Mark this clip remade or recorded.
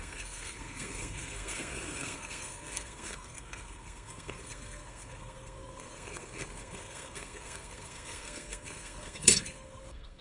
remade